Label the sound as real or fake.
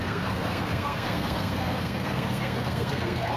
fake